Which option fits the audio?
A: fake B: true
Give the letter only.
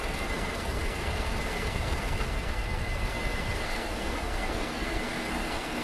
A